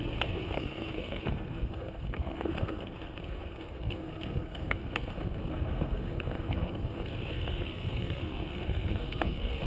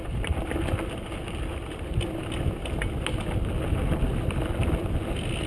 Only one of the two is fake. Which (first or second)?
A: first